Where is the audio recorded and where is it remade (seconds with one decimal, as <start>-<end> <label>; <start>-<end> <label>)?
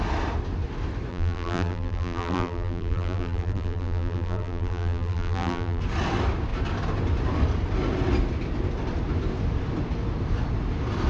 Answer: 0.0-1.1 recorded; 1.1-5.8 remade; 5.8-11.1 recorded